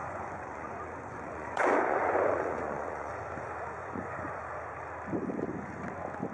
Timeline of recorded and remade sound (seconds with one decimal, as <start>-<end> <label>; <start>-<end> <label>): 0.0-3.1 remade; 3.1-3.8 recorded; 3.8-4.4 remade; 4.4-6.3 recorded